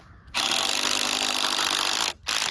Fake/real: fake